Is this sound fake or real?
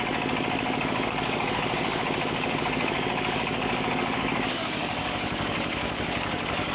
fake